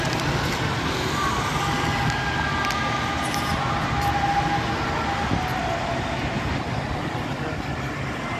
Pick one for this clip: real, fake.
real